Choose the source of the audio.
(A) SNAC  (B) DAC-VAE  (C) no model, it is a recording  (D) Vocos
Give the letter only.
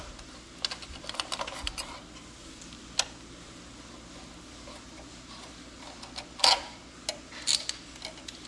C